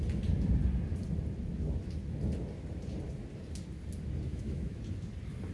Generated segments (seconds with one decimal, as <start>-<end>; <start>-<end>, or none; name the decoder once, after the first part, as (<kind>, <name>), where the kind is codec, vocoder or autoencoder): 4.3-4.8 (autoencoder, DAC-VAE)